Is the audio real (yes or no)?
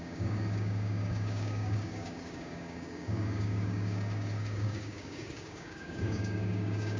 no